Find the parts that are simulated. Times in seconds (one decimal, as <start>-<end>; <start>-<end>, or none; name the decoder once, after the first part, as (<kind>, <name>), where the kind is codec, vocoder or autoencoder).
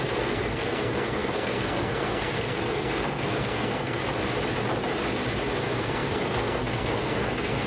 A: 0.0-4.0 (codec, SNAC); 5.6-7.7